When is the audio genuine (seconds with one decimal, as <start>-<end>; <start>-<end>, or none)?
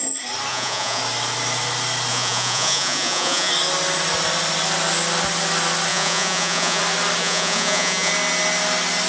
0.0-0.5; 1.0-2.1; 3.5-5.9; 6.8-7.2; 8.1-9.1